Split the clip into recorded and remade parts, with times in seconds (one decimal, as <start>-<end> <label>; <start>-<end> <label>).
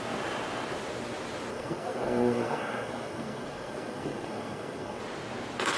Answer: 0.0-1.5 recorded; 1.5-5.0 remade; 5.0-5.8 recorded